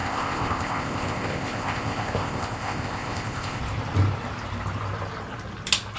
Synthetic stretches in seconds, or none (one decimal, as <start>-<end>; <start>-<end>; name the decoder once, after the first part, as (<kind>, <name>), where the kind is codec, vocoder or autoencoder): 0.0-3.6 (codec, ZipCodec)